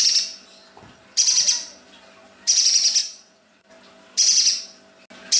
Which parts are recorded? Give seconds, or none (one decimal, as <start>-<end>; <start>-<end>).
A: 0.0-3.0; 3.7-5.4